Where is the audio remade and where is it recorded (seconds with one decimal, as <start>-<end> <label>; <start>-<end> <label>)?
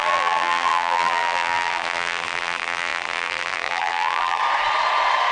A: 0.0-4.4 remade; 4.4-5.3 recorded